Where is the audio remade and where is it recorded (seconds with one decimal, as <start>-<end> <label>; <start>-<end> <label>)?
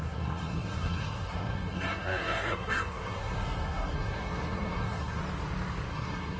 0.0-5.2 remade; 5.2-5.9 recorded; 5.9-6.4 remade